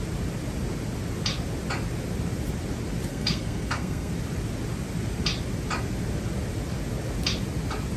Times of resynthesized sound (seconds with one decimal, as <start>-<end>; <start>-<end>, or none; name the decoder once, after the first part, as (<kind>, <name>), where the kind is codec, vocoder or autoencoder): 3.1-4.1 (codec, SNAC)